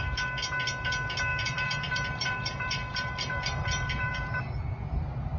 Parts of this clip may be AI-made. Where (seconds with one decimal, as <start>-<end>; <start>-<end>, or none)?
1.3-4.5